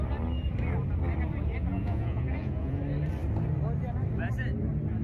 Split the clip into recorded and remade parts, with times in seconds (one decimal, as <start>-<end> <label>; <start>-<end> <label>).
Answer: 0.0-1.7 recorded; 1.7-2.8 remade; 2.8-5.0 recorded

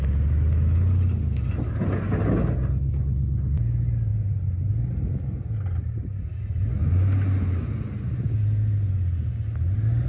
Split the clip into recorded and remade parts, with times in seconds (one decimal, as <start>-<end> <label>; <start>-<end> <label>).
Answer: 0.0-10.1 recorded

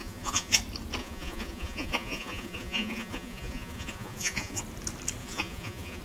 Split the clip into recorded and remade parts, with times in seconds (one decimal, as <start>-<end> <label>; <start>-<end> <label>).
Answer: 0.0-0.6 remade; 0.6-1.0 recorded; 1.0-4.6 remade; 4.6-5.2 recorded; 5.2-6.0 remade